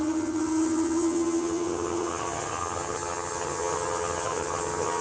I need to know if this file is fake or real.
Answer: fake